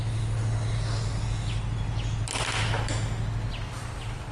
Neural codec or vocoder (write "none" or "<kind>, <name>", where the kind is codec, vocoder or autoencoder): none